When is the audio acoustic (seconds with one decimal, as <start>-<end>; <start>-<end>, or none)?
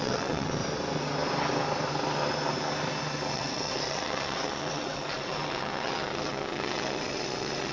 0.6-3.3